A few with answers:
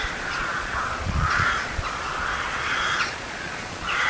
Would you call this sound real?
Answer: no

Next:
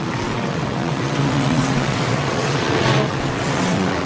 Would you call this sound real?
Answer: no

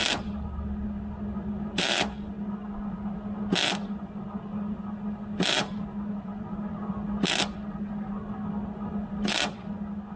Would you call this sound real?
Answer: yes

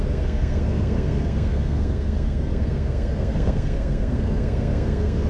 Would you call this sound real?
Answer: no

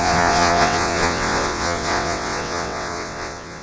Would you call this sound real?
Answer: no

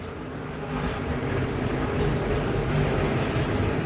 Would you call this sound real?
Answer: yes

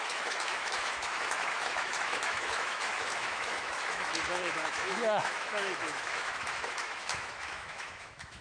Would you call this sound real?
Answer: no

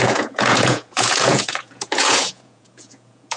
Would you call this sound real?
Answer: no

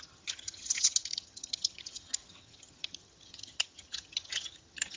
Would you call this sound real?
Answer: no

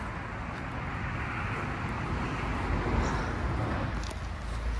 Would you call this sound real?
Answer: yes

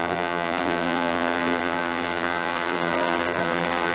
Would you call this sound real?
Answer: no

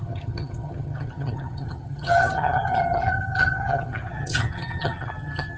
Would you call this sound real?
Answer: no